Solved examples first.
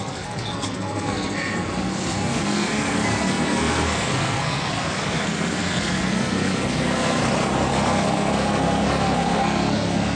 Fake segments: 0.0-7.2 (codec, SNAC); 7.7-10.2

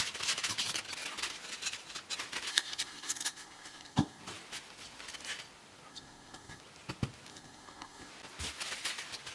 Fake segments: 2.5-4.2 (codec, SNAC); 5.9-6.6; 7.3-8.1

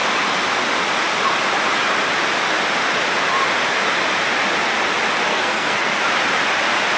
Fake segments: 5.3-6.0 (codec, SNAC)

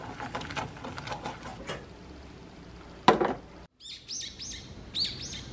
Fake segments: none